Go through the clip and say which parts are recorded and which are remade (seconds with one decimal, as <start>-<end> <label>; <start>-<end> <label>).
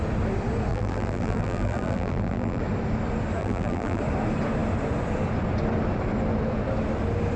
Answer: 0.0-0.7 recorded; 0.7-2.6 remade; 2.6-3.4 recorded; 3.4-4.0 remade; 4.0-7.4 recorded